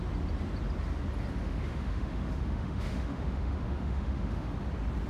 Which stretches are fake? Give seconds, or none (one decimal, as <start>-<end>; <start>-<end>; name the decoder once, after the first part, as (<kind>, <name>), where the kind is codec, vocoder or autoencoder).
1.4-4.5 (autoencoder, DAC-VAE)